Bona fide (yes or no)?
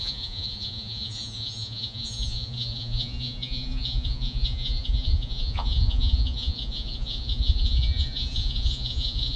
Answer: no